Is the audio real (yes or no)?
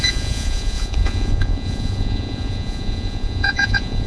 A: no